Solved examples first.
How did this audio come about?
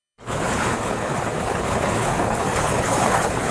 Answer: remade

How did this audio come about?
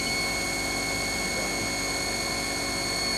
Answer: recorded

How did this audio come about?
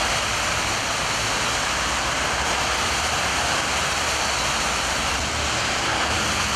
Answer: recorded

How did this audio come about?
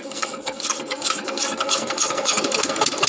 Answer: remade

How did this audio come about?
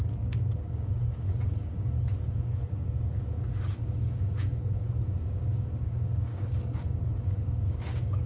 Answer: remade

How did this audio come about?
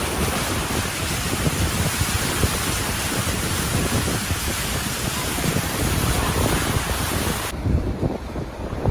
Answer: remade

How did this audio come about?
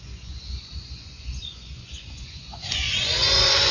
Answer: remade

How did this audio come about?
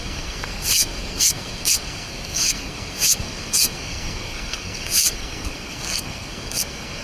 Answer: remade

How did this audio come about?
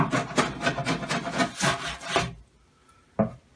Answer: recorded